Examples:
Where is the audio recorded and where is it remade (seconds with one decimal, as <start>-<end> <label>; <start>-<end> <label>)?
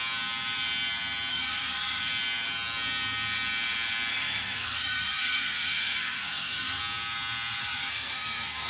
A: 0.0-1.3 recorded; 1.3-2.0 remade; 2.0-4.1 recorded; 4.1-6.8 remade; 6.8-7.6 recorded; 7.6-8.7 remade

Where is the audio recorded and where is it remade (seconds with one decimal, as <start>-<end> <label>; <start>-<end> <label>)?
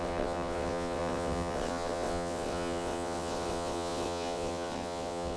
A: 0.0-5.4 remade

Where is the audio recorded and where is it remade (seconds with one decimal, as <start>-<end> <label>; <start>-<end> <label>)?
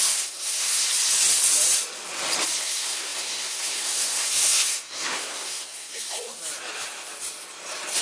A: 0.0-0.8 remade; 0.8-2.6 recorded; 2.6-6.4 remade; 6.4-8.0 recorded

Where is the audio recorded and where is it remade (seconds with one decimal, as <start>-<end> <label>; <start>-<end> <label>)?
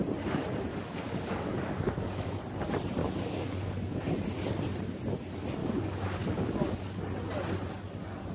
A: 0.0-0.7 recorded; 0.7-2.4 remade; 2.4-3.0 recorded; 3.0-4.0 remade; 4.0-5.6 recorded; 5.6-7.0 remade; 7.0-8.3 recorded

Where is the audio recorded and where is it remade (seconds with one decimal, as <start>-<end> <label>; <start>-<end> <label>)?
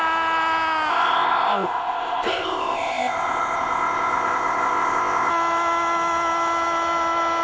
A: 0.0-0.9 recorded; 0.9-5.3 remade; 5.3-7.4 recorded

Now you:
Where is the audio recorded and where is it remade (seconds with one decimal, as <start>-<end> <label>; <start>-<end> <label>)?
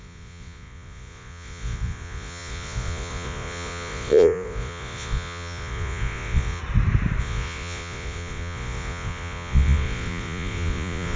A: 0.0-6.6 remade; 6.6-7.2 recorded; 7.2-11.2 remade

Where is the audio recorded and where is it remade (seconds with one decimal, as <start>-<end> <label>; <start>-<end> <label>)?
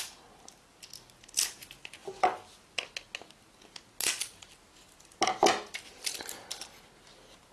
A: 0.0-7.5 recorded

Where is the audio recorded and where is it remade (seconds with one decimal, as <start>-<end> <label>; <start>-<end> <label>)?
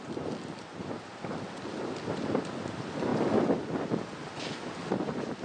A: 0.0-5.4 recorded